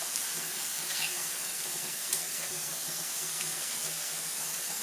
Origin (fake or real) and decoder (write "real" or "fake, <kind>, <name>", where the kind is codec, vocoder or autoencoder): fake, codec, SNAC